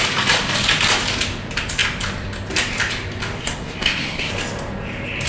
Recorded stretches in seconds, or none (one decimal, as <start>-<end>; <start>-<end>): 0.0-3.4; 4.3-5.3

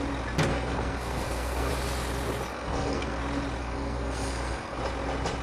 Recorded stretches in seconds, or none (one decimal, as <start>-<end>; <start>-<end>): 0.0-0.5; 1.7-2.5; 3.2-3.6; 4.8-5.4